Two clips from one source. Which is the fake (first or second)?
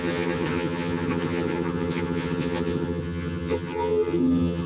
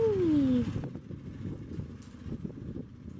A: first